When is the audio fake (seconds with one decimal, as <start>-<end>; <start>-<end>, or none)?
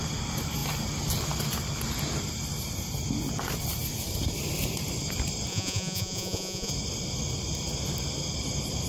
5.5-6.7